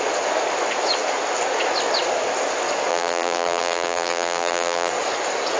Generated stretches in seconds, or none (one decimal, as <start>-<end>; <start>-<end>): 2.9-4.9